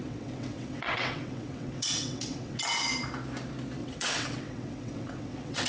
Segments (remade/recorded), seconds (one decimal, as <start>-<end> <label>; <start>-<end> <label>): 0.0-2.6 remade; 2.6-3.8 recorded; 3.8-5.7 remade